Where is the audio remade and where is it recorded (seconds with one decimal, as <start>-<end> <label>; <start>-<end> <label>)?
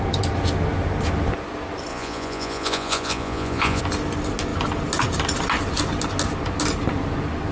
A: 0.0-1.9 recorded; 1.9-3.8 remade; 3.8-7.5 recorded